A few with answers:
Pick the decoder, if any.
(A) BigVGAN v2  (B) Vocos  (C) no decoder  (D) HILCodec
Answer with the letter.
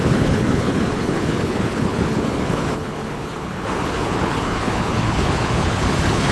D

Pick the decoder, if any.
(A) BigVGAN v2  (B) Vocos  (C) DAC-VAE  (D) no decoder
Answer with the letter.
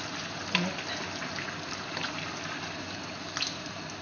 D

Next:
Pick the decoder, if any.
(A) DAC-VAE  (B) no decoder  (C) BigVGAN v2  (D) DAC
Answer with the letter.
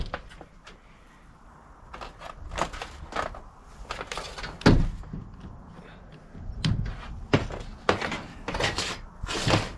B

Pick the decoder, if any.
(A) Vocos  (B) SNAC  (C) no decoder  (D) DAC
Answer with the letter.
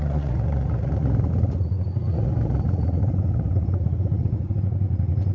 A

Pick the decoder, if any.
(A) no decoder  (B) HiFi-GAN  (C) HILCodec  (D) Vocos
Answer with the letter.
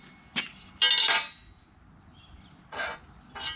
A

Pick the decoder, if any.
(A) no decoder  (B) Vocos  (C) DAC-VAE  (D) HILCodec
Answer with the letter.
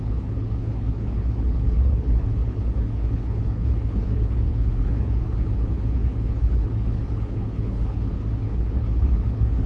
D